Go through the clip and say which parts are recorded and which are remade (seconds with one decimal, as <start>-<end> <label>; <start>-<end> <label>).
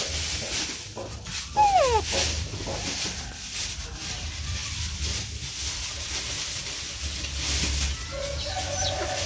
0.0-9.3 recorded